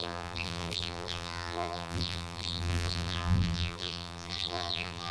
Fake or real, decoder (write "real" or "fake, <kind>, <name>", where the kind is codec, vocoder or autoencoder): fake, vocoder, BigVGAN v2